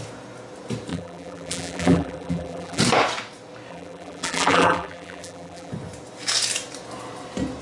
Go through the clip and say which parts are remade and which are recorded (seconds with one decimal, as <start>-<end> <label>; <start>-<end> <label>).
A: 0.0-0.9 recorded; 0.9-2.8 remade; 2.8-3.7 recorded; 3.7-5.7 remade; 5.7-7.6 recorded